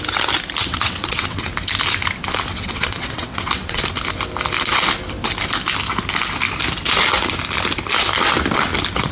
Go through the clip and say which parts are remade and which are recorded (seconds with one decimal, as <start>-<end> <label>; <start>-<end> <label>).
0.0-0.6 recorded; 0.6-1.5 remade; 1.5-2.5 recorded; 2.5-3.8 remade; 3.8-9.1 recorded